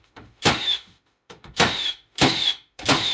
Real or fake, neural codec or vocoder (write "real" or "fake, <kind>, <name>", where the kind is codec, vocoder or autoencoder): fake, autoencoder, DAC-VAE